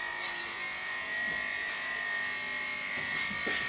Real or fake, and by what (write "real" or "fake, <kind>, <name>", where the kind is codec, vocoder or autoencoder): real